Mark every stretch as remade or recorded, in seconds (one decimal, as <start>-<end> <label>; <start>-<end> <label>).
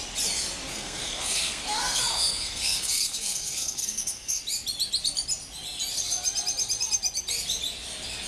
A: 0.0-0.7 recorded; 0.7-4.4 remade; 4.4-8.3 recorded